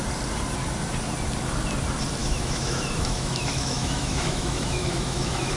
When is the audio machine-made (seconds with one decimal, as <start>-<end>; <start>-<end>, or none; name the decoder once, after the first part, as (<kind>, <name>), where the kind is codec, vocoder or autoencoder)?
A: 2.2-5.6 (autoencoder, DAC-VAE)